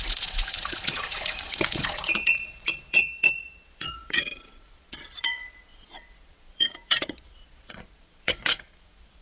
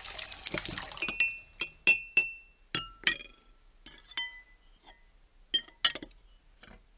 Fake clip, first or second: first